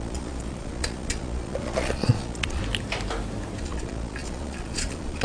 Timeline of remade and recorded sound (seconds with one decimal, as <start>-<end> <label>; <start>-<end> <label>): 0.0-2.6 remade; 2.6-3.6 recorded; 3.6-5.2 remade